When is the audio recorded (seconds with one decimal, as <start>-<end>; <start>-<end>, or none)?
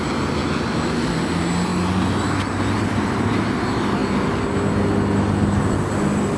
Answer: 0.0-6.4